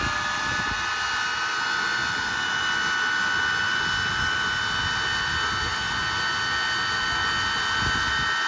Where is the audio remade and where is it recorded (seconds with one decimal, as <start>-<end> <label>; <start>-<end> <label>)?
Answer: 0.0-8.5 recorded